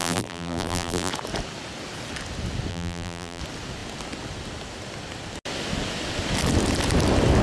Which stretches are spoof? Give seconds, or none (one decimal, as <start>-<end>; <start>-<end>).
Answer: 0.0-1.1; 2.7-3.4